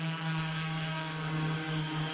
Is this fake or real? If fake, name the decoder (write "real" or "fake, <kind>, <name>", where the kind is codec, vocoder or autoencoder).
fake, codec, DAC